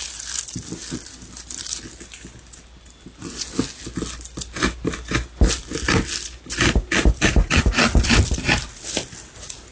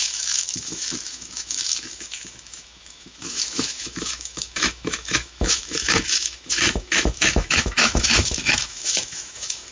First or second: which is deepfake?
second